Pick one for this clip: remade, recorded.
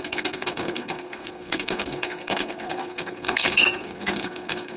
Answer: remade